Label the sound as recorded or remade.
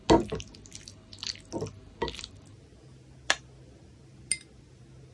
recorded